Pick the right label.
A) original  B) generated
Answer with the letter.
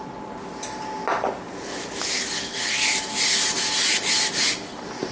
A